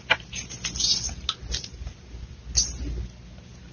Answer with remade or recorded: recorded